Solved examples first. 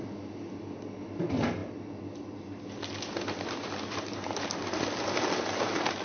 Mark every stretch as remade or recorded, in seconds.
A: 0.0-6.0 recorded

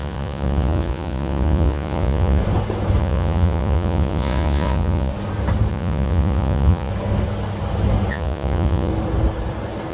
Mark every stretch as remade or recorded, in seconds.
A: 0.0-2.4 remade; 2.4-3.0 recorded; 3.0-5.1 remade; 5.1-5.7 recorded; 5.7-6.9 remade; 6.9-8.1 recorded; 8.1-8.9 remade; 8.9-9.9 recorded

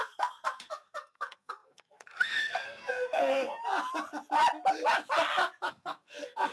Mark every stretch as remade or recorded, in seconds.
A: 0.0-3.6 remade; 3.6-5.7 recorded; 5.7-6.5 remade